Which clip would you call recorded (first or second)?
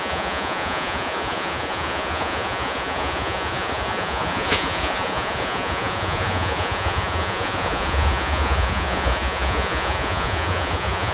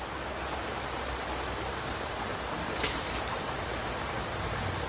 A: second